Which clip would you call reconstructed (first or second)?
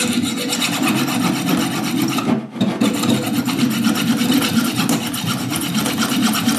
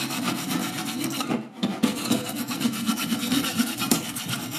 second